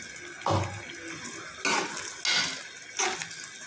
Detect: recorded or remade recorded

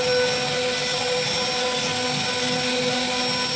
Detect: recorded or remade recorded